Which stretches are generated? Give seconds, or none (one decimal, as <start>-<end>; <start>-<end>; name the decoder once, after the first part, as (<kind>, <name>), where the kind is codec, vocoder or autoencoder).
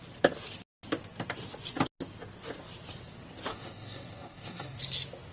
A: 3.5-4.8 (codec, DAC)